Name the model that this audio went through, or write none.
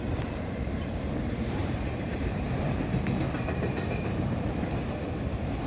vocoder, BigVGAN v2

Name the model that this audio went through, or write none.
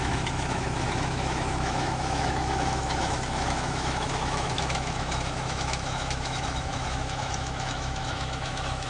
autoencoder, DAC-VAE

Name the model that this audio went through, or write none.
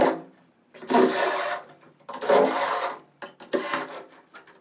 none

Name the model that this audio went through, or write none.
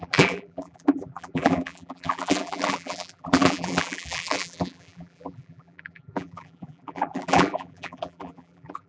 vocoder, BigVGAN v2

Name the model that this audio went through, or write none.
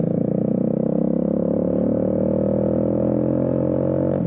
none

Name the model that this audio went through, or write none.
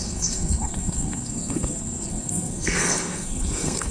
codec, SNAC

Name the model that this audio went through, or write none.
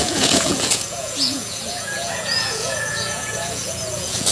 vocoder, Vocos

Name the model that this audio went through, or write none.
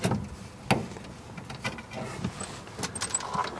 none